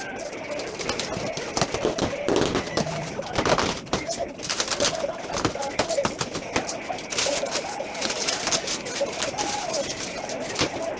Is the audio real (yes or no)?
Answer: yes